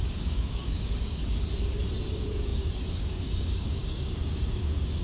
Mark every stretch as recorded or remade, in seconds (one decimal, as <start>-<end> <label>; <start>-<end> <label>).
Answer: 0.0-1.2 remade; 1.2-2.1 recorded; 2.1-5.0 remade